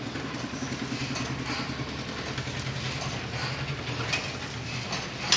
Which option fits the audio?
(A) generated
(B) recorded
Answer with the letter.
B